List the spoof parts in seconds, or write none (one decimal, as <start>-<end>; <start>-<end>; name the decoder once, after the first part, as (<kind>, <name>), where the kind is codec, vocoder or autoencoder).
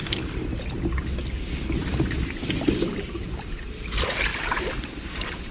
1.9-2.9 (vocoder, BigVGAN v2); 4.3-5.5